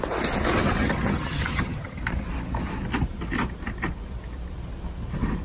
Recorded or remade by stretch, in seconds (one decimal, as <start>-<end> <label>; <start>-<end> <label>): 0.0-0.8 recorded; 0.8-2.0 remade; 2.0-5.4 recorded